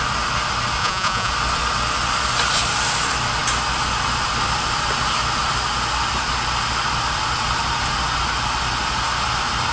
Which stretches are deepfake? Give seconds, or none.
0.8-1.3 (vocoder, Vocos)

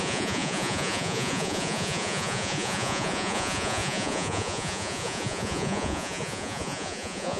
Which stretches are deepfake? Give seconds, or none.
0.0-7.4 (vocoder, Vocos)

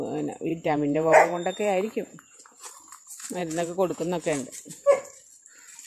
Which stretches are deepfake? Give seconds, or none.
0.5-2.7 (vocoder, Vocos); 3.4-4.5

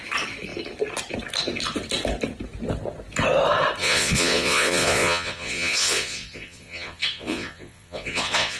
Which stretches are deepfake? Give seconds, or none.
3.8-8.6 (vocoder, Vocos)

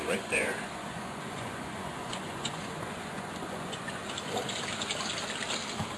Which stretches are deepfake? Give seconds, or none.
0.0-4.0 (vocoder, Vocos)